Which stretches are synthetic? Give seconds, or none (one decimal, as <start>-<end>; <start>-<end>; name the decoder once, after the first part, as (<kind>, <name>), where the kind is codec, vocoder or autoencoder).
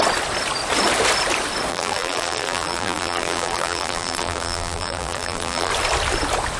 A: 1.7-5.7 (vocoder, BigVGAN v2)